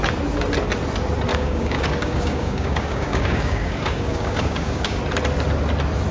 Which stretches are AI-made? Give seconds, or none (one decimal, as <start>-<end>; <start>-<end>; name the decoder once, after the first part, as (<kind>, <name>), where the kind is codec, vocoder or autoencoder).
1.3-5.0 (codec, DAC)